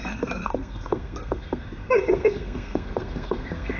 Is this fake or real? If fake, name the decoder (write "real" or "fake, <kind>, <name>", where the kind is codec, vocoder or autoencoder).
fake, codec, SNAC